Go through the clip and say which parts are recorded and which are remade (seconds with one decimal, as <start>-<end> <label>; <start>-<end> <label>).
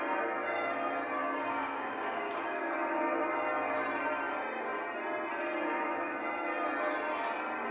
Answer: 0.0-1.2 recorded; 1.2-2.7 remade; 2.7-7.7 recorded